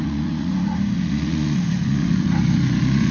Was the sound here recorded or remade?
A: remade